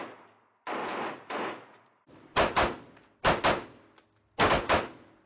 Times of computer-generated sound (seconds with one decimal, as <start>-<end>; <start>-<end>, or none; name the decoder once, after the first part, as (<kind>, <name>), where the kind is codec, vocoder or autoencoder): 0.8-2.0 (vocoder, Vocos)